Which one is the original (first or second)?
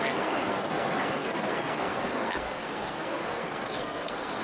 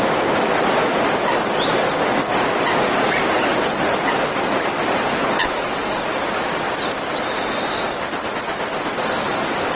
second